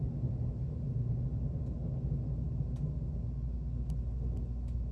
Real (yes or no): yes